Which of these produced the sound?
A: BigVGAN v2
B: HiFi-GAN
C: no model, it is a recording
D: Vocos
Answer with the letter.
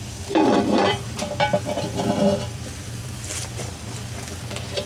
A